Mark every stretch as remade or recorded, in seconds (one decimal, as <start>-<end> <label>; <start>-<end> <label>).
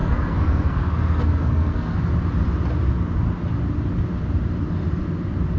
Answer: 0.0-2.0 remade; 2.0-5.6 recorded